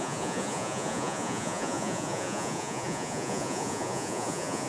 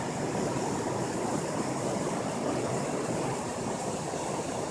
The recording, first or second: second